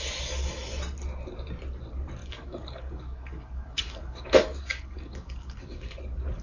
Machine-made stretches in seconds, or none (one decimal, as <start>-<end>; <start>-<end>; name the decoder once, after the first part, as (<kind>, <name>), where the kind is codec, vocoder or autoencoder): 2.2-6.0 (codec, DAC)